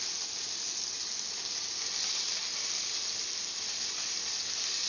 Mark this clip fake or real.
real